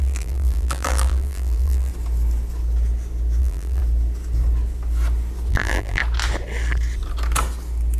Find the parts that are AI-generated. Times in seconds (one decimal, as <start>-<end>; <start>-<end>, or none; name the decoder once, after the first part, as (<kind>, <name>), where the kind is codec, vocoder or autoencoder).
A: 0.0-1.9 (vocoder, BigVGAN v2); 3.4-3.8; 5.5-6.0